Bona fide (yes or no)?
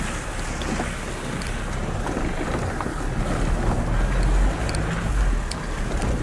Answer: yes